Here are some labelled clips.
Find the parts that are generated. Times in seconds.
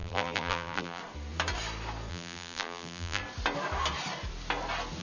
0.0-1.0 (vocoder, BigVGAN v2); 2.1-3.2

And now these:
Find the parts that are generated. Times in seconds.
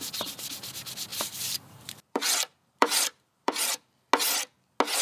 1.1-3.9 (vocoder, BigVGAN v2)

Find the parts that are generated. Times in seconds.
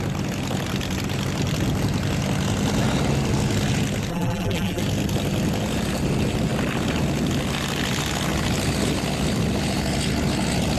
4.1-4.8 (vocoder, BigVGAN v2)